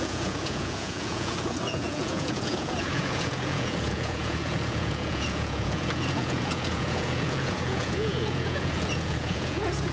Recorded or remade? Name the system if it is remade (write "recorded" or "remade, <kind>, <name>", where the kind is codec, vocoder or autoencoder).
remade, vocoder, Vocos